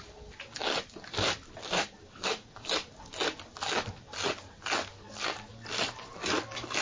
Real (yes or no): yes